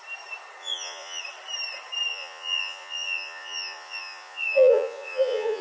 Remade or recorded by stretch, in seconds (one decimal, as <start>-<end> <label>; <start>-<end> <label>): 0.0-0.6 recorded; 0.6-1.2 remade; 1.2-2.1 recorded; 2.1-5.6 remade